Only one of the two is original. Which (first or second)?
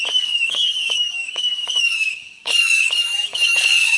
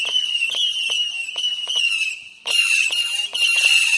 second